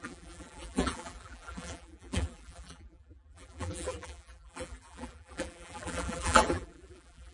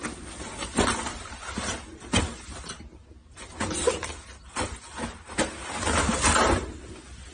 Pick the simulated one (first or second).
first